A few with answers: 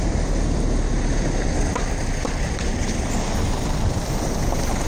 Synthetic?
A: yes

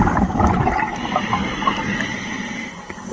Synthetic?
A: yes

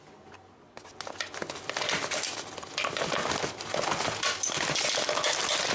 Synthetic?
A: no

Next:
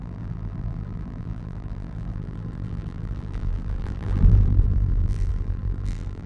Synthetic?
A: yes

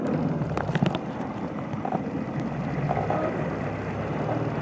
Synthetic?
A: no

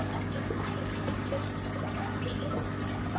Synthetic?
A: no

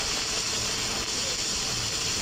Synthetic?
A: no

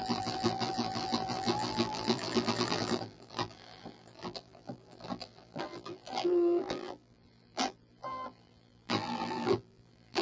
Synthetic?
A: yes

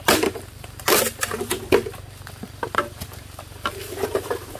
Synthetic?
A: yes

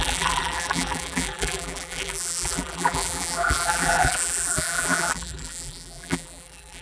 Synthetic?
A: yes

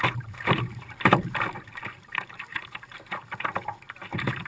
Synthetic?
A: yes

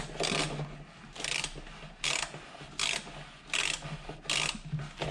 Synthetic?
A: no